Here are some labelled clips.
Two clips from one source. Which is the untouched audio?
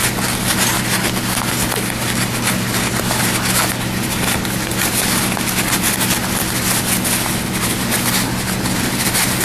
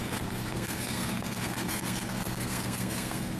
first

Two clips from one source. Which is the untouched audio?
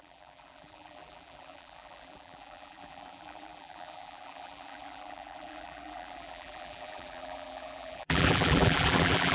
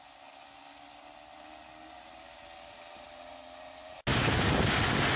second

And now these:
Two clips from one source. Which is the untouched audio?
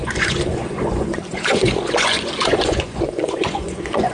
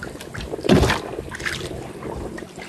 second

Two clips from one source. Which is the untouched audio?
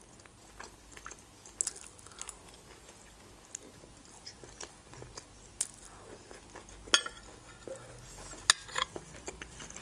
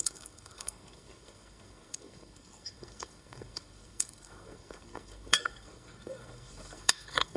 first